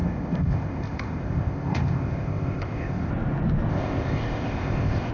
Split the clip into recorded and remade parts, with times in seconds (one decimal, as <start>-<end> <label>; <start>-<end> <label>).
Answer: 0.0-3.1 remade; 3.1-3.7 recorded; 3.7-5.1 remade